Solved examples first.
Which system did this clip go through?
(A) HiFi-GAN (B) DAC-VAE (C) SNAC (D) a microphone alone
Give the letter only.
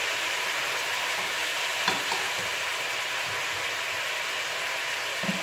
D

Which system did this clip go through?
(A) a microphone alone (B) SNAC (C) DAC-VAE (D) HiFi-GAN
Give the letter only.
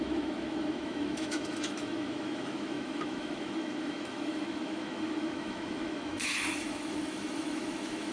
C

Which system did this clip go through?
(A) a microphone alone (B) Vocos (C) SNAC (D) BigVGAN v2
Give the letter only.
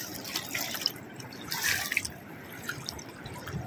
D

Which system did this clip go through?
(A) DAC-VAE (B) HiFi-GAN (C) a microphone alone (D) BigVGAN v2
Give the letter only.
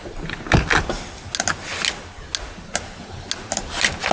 C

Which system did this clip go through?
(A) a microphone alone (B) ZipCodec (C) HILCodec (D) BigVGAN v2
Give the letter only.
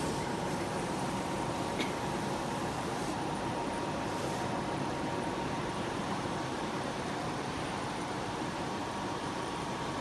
D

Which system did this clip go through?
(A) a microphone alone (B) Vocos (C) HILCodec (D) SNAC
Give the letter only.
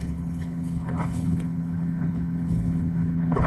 C